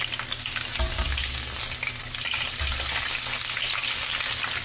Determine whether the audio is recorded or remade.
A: recorded